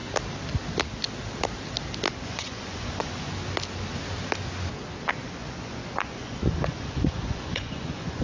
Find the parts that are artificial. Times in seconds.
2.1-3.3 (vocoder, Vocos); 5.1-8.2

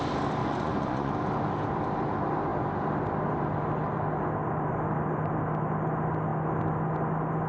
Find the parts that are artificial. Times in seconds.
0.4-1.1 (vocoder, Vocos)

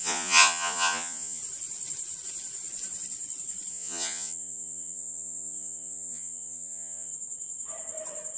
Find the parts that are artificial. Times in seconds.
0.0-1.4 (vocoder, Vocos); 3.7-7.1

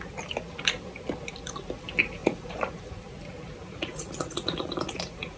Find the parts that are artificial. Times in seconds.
2.2-2.8 (vocoder, Vocos); 3.6-5.4

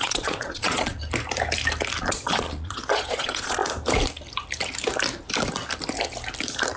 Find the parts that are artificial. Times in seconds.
0.0-1.0 (vocoder, Vocos); 2.0-3.6

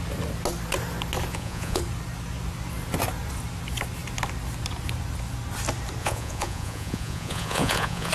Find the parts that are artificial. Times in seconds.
1.3-1.8 (vocoder, Vocos); 6.0-8.1

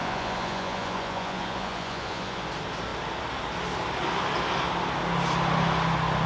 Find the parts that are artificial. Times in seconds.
0.0-2.5 (vocoder, Vocos)